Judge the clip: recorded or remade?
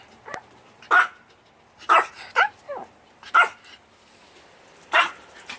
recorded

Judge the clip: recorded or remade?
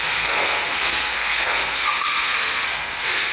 remade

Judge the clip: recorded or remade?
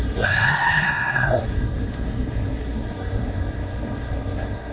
remade